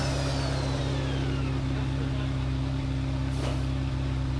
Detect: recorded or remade recorded